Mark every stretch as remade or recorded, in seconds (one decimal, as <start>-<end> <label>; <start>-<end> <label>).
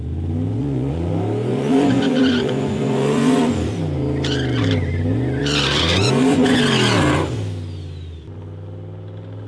0.0-0.6 recorded; 0.6-1.1 remade; 1.1-1.5 recorded; 1.5-3.5 remade; 3.5-5.4 recorded; 5.4-6.6 remade; 6.6-9.5 recorded